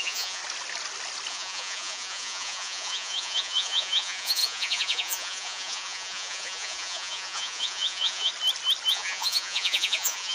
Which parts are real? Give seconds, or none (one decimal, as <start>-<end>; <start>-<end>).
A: 0.4-1.3; 8.3-8.9